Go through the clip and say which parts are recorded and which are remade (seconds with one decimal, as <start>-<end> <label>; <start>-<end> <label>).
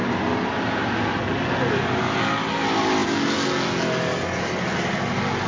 0.0-5.5 recorded